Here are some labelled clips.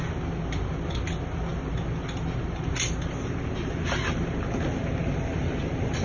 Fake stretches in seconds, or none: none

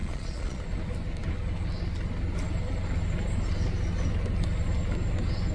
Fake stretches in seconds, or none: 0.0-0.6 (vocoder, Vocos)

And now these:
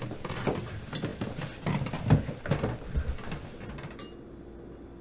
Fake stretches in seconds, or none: none